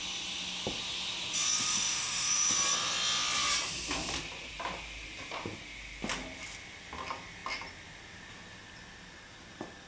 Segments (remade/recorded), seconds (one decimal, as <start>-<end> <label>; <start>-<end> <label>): 0.0-1.6 recorded; 1.6-2.5 remade; 2.5-9.9 recorded